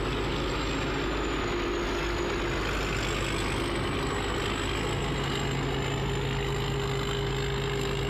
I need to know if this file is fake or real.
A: real